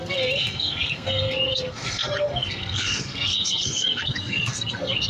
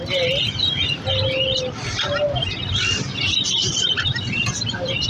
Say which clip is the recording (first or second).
second